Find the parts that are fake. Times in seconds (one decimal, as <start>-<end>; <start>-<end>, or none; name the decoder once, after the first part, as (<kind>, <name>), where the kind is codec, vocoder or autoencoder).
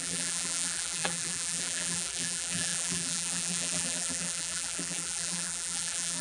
0.0-6.2 (vocoder, BigVGAN v2)